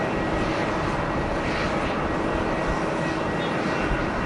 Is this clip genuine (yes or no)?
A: yes